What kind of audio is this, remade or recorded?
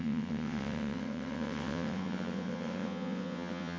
remade